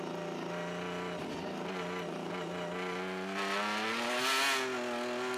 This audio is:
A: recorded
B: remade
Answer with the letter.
A